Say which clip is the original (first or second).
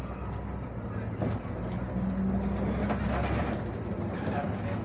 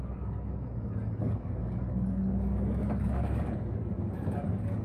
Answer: first